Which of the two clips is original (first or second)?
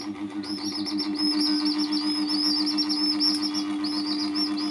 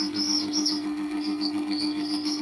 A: first